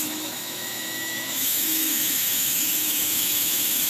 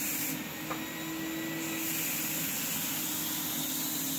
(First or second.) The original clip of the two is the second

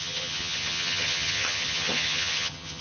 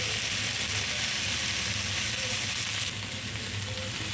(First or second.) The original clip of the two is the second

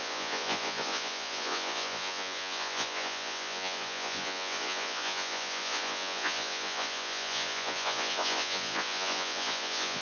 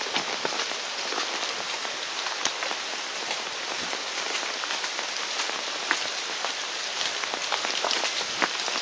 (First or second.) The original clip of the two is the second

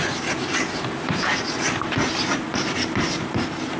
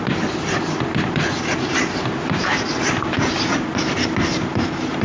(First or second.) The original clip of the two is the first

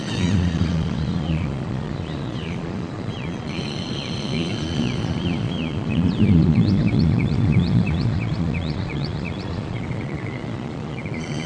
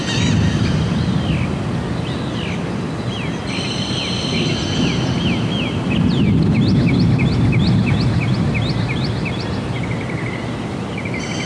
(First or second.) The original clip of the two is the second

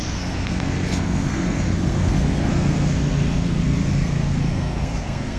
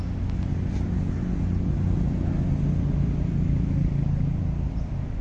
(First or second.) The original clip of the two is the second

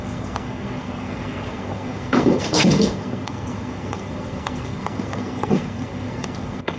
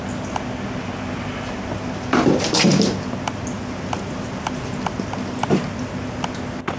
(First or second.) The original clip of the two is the second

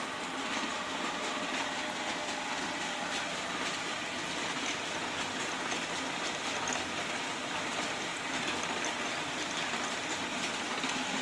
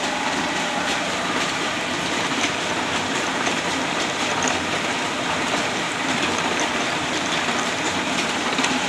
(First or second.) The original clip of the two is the first